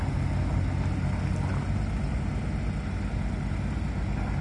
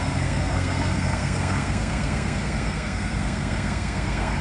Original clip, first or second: first